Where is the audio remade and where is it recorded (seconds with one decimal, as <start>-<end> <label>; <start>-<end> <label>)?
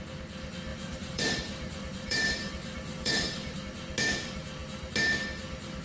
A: 0.0-0.7 recorded; 0.7-3.6 remade; 3.6-5.8 recorded